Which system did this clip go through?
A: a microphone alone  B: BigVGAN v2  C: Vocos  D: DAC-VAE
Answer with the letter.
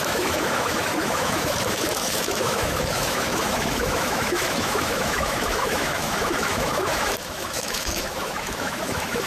D